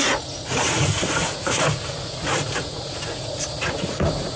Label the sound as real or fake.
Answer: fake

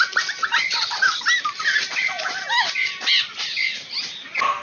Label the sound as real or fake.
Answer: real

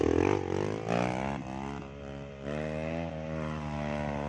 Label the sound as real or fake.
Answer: real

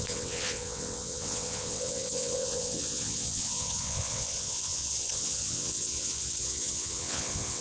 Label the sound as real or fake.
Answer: fake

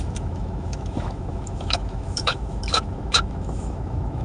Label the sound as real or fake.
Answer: fake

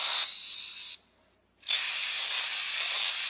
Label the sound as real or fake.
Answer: real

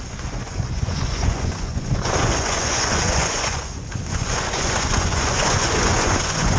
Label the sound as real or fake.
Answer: fake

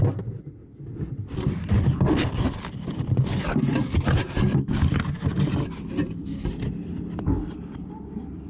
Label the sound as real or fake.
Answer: real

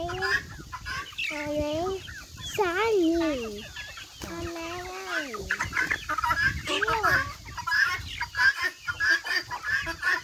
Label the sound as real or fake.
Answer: real